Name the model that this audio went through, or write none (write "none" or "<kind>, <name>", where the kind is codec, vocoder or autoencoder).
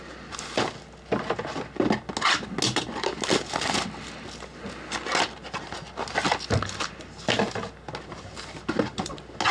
none